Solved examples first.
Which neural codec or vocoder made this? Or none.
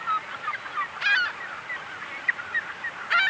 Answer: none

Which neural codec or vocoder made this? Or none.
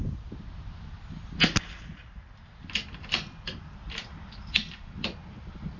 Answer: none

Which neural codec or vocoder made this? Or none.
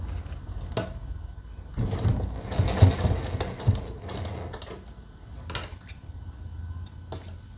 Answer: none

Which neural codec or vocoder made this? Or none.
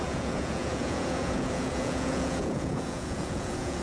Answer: vocoder, Vocos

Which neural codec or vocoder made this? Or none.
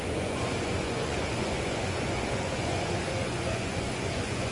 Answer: vocoder, Vocos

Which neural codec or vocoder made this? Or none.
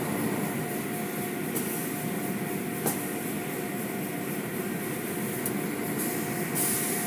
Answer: none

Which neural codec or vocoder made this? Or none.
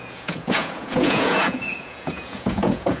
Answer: vocoder, Vocos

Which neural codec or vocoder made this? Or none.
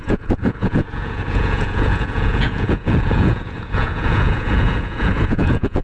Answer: vocoder, Vocos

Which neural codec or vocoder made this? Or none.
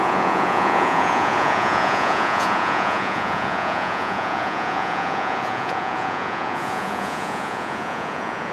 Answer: vocoder, Vocos